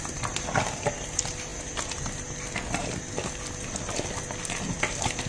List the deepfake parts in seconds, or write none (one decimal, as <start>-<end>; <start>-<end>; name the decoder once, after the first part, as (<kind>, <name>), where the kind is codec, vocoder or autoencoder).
none